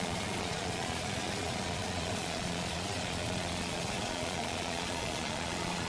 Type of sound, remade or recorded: remade